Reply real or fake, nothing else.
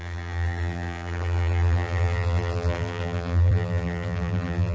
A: fake